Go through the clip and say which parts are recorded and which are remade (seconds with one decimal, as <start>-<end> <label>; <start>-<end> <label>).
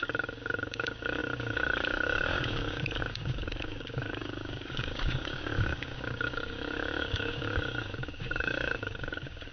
0.0-9.5 remade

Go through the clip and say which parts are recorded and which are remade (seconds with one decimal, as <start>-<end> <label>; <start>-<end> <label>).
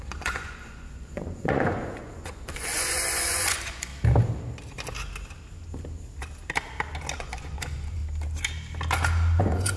0.0-3.9 remade; 3.9-7.2 recorded; 7.2-8.0 remade; 8.0-9.4 recorded; 9.4-9.8 remade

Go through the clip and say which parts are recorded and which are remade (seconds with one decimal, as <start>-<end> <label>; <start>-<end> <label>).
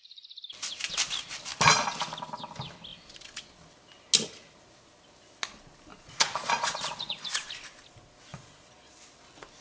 0.0-5.9 recorded; 5.9-7.5 remade; 7.5-8.3 recorded; 8.3-8.9 remade; 8.9-9.6 recorded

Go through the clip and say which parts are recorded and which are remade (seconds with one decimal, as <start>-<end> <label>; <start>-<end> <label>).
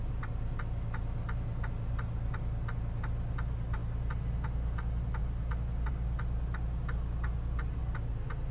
0.0-8.5 recorded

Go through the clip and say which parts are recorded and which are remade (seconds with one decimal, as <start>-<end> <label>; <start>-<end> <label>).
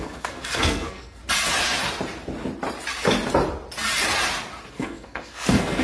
0.0-1.2 remade; 1.2-4.7 recorded; 4.7-5.8 remade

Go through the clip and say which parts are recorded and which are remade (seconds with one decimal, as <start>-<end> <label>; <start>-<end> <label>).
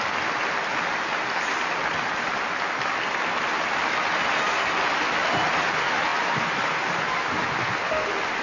0.0-8.4 recorded